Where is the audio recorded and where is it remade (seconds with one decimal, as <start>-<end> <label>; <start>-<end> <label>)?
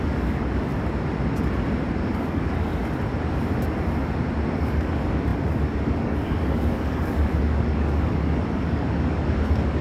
0.0-0.7 remade; 0.7-1.9 recorded; 1.9-2.8 remade; 2.8-4.6 recorded; 4.6-9.8 remade